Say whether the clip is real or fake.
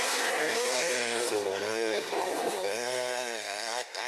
fake